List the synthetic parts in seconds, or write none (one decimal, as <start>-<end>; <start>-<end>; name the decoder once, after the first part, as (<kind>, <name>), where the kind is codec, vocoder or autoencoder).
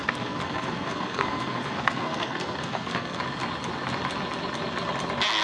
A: 0.0-3.2 (codec, SNAC)